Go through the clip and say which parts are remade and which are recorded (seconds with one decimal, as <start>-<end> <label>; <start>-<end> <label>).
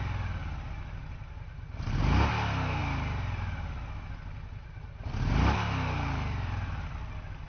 0.0-7.5 recorded